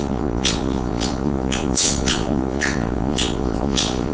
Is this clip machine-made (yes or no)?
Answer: yes